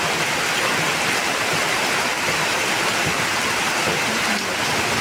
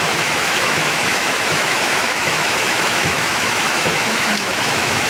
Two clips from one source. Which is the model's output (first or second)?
second